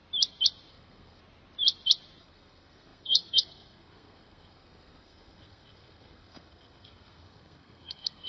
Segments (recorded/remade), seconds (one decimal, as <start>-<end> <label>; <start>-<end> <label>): 0.0-0.7 recorded; 0.7-1.2 remade; 1.2-2.2 recorded; 2.2-8.3 remade